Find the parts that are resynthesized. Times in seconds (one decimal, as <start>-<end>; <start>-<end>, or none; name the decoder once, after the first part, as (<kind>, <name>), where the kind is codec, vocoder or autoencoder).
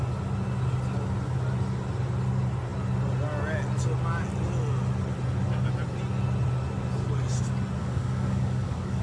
7.8-9.0 (codec, DAC)